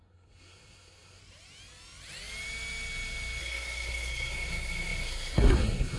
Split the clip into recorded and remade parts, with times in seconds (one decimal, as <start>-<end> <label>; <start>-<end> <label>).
0.0-1.2 remade; 1.2-3.4 recorded; 3.4-6.0 remade